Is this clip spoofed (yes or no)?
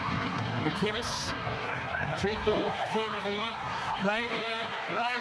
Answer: yes